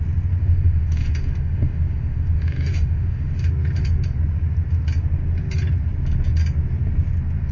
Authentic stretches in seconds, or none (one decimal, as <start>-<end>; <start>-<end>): 0.0-0.4; 3.5-7.5

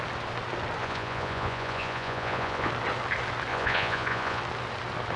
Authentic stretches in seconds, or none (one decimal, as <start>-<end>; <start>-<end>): 0.0-0.8; 2.7-3.5; 4.4-5.2

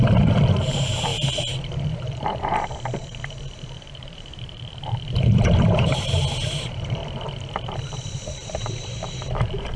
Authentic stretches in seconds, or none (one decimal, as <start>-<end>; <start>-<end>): 1.1-3.0; 7.0-8.0

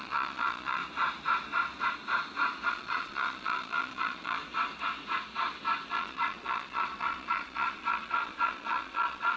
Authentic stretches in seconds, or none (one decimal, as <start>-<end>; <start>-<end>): 0.8-2.7; 4.4-5.9

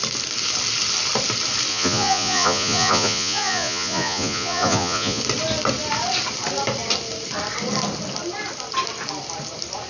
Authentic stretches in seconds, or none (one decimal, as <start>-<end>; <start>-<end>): 0.0-1.7; 5.2-9.9

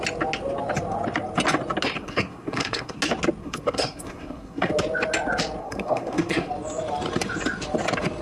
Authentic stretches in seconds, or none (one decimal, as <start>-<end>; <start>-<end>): 0.0-2.0; 3.0-3.4; 4.7-5.6; 6.5-8.2

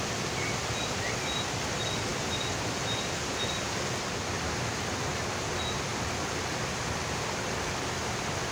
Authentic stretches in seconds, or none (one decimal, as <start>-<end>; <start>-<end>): 0.0-8.5